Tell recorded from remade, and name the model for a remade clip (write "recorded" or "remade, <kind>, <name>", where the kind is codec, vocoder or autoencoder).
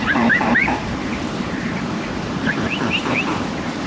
remade, vocoder, BigVGAN v2